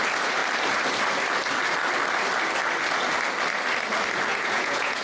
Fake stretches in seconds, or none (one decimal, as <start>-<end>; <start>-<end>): 4.3-5.0